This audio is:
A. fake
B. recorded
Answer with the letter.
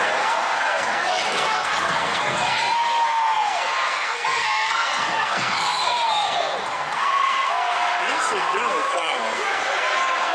A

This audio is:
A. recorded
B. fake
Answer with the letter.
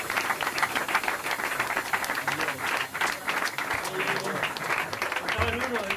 A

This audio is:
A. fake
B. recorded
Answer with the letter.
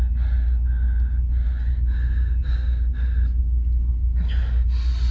B